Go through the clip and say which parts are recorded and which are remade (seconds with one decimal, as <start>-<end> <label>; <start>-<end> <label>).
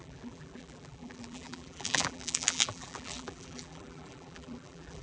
0.0-5.0 remade